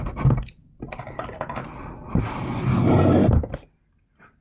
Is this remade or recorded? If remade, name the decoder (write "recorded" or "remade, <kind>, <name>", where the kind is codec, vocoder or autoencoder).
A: recorded